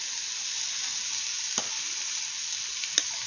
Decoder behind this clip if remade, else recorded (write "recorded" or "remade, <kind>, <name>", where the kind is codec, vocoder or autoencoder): recorded